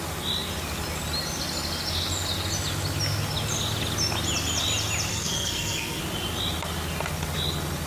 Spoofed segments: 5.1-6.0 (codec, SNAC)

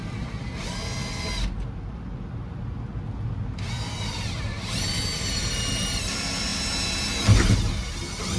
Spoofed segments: none

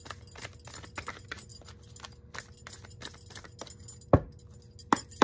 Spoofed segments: none

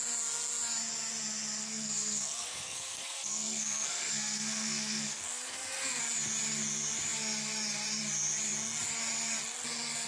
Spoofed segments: 1.6-6.0 (codec, SNAC)

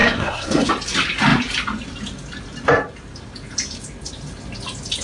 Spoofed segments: 0.0-0.7 (codec, SNAC)

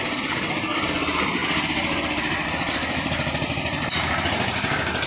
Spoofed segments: none